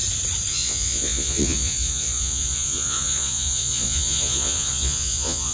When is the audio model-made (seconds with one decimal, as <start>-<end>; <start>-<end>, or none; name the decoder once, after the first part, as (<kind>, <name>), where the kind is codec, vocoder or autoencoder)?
0.5-5.5 (vocoder, Vocos)

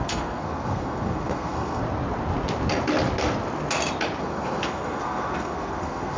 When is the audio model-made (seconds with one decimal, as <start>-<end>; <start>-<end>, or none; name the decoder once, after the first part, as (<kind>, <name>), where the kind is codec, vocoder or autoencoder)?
0.0-1.8 (codec, SNAC); 4.2-6.2

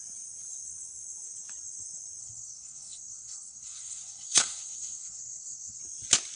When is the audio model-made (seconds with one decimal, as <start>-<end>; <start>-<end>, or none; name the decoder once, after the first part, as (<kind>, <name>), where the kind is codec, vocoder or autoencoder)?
2.2-5.8 (codec, SNAC)

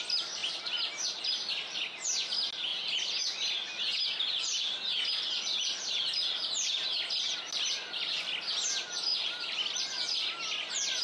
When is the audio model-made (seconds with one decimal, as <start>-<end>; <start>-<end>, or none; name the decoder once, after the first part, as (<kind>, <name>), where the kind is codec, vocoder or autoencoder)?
none

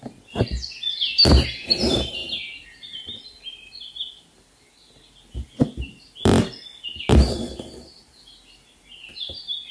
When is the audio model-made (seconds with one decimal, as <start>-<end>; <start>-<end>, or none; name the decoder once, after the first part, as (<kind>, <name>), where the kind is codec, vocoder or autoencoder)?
none